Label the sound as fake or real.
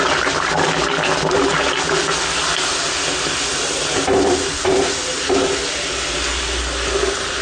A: real